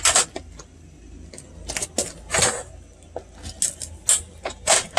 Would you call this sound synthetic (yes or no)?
no